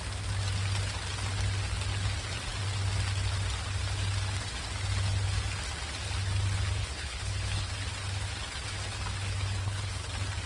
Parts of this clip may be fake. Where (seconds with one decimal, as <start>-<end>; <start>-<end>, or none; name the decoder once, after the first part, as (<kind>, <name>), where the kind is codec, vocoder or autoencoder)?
6.8-7.7 (codec, HILCodec); 9.6-10.1